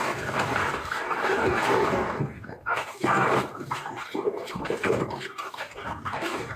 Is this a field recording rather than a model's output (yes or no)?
no